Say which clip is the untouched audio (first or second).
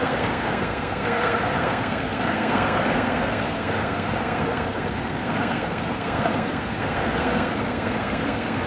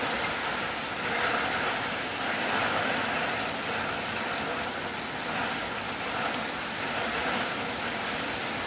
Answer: second